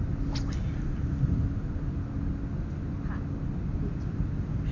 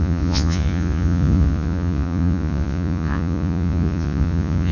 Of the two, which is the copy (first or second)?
second